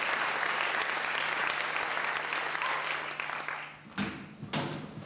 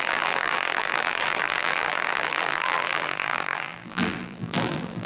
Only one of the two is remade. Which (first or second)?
second